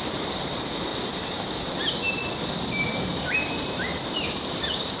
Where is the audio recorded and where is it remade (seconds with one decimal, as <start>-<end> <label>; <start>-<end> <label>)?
0.0-0.9 remade; 0.9-1.7 recorded; 1.7-2.2 remade; 2.2-2.8 recorded; 2.8-5.0 remade